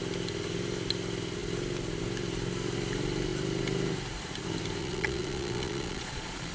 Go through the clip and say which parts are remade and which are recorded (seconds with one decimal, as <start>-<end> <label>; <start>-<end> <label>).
0.0-4.8 recorded; 4.8-6.5 remade